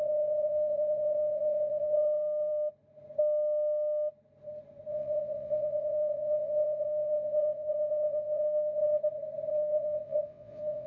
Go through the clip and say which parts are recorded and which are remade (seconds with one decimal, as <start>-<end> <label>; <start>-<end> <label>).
0.0-2.5 remade; 2.5-4.9 recorded; 4.9-8.8 remade; 8.8-9.5 recorded; 9.5-10.9 remade